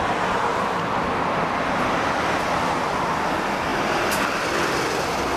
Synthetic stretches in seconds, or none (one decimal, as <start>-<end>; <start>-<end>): 0.5-3.2; 3.7-4.2